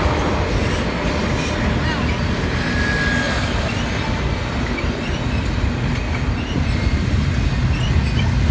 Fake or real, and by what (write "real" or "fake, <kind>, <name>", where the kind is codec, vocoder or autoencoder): real